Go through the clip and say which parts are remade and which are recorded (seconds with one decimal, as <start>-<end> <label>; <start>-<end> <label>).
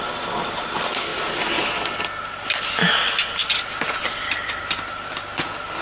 0.0-1.1 recorded; 1.1-1.8 remade; 1.8-5.8 recorded